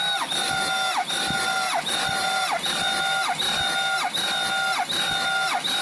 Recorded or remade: recorded